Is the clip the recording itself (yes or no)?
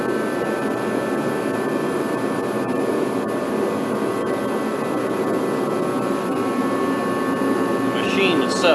yes